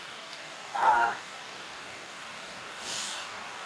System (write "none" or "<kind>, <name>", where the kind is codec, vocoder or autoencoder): codec, DAC